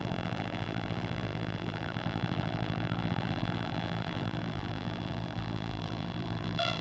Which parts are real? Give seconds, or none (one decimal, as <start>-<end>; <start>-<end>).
none